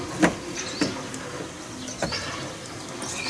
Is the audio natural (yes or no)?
yes